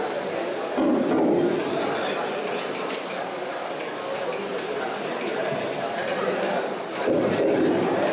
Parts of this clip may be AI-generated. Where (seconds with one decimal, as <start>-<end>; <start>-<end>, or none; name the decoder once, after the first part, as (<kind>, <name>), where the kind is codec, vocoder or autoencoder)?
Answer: none